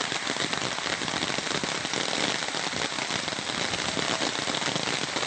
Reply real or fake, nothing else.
real